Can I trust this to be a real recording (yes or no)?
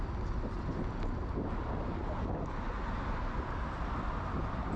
yes